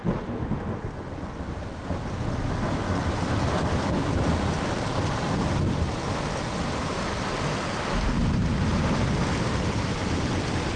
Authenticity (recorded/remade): recorded